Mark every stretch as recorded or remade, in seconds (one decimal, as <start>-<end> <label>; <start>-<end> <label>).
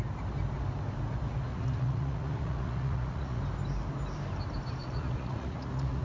0.0-1.5 recorded; 1.5-3.4 remade; 3.4-4.8 recorded; 4.8-6.0 remade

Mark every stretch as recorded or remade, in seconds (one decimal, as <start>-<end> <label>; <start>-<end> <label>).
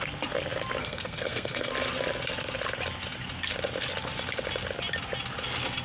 0.0-0.8 recorded; 0.8-1.7 remade; 1.7-5.8 recorded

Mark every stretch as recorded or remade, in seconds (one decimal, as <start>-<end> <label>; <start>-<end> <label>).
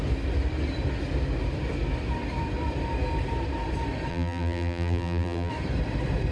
0.0-4.1 recorded; 4.1-5.5 remade; 5.5-6.3 recorded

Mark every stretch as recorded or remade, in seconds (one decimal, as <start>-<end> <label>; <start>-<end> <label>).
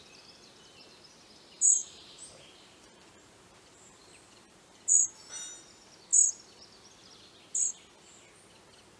0.0-1.8 recorded; 1.8-5.1 remade; 5.1-9.0 recorded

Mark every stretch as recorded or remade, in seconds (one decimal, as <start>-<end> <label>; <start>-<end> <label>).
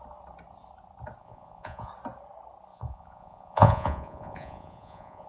0.0-1.2 recorded; 1.2-1.9 remade; 1.9-2.7 recorded; 2.7-5.3 remade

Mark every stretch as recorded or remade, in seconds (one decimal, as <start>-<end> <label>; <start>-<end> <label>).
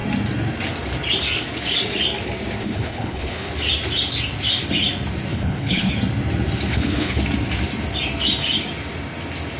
0.0-2.6 recorded; 2.6-3.5 remade; 3.5-5.3 recorded; 5.3-5.9 remade; 5.9-6.7 recorded; 6.7-7.2 remade; 7.2-9.6 recorded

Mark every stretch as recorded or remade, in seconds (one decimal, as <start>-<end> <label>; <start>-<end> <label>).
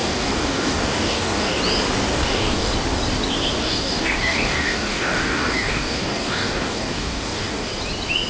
0.0-1.6 remade; 1.6-2.1 recorded; 2.1-2.7 remade; 2.7-3.6 recorded; 3.6-7.7 remade; 7.7-8.3 recorded